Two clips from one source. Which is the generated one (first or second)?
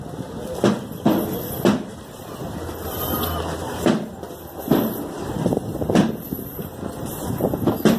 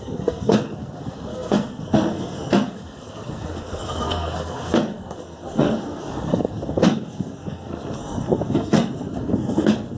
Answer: second